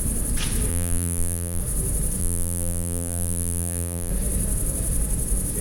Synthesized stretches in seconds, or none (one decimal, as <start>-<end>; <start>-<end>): 0.7-1.6; 2.2-4.1

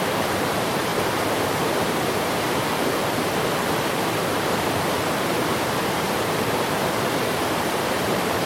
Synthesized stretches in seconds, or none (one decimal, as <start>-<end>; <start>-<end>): 0.0-0.9; 1.4-8.5

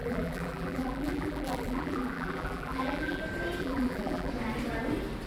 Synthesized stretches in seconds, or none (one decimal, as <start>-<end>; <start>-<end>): 0.0-3.2; 3.6-4.3

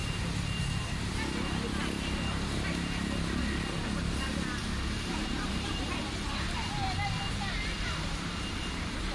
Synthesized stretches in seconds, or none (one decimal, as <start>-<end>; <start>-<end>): 4.6-5.5